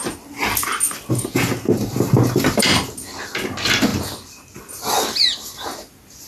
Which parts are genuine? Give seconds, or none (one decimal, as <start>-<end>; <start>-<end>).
0.0-6.3